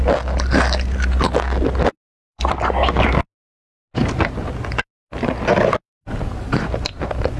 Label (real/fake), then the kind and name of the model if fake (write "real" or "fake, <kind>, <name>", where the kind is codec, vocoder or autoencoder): real